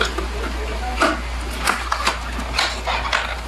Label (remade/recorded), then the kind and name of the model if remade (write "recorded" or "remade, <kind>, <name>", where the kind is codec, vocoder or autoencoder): recorded